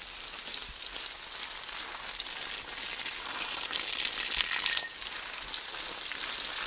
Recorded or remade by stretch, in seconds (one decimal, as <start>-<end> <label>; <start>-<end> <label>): 0.0-6.7 recorded